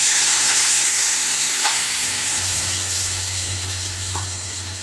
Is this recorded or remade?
remade